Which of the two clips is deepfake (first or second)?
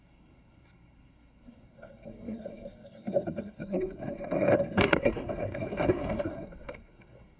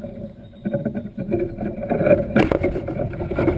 first